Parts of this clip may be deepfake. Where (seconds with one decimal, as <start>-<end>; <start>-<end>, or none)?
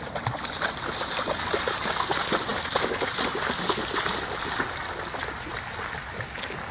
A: none